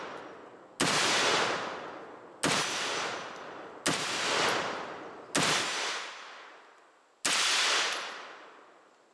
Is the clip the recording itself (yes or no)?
yes